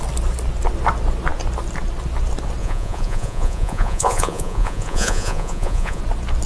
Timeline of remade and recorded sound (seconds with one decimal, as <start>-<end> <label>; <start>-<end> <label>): 0.0-2.6 recorded; 2.6-6.0 remade; 6.0-6.5 recorded